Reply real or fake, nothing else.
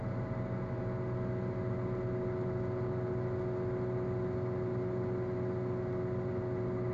real